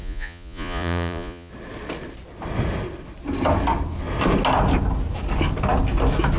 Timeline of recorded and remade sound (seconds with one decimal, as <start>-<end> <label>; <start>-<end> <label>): 0.0-1.5 remade; 1.5-6.4 recorded